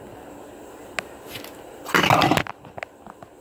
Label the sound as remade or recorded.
recorded